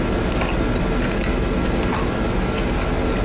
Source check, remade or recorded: recorded